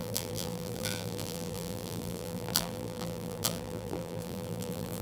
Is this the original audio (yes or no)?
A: no